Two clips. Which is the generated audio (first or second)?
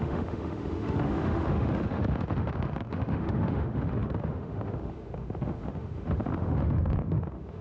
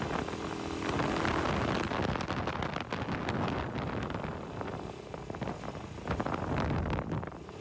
first